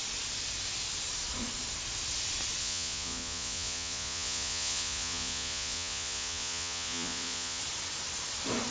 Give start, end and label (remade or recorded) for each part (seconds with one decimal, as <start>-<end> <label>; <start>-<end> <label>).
0.0-2.6 recorded; 2.6-7.6 remade; 7.6-8.7 recorded

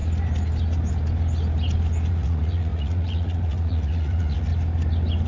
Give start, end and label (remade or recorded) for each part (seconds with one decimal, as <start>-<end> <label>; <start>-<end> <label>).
0.0-2.1 recorded; 2.1-4.5 remade; 4.5-5.3 recorded

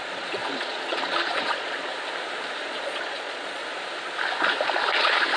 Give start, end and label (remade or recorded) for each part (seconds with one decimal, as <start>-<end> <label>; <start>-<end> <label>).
0.0-1.9 remade; 1.9-2.6 recorded; 2.6-3.6 remade; 3.6-4.9 recorded; 4.9-5.4 remade

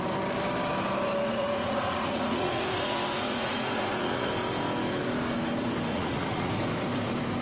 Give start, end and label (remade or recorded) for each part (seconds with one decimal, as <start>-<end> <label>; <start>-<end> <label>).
0.0-1.3 recorded; 1.3-4.3 remade; 4.3-5.9 recorded; 5.9-6.5 remade; 6.5-7.4 recorded